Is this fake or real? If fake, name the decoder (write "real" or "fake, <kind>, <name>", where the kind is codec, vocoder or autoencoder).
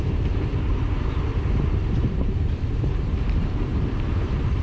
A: fake, vocoder, BigVGAN v2